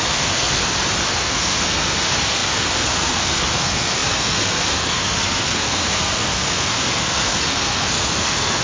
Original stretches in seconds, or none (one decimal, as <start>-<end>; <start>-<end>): 0.6-1.1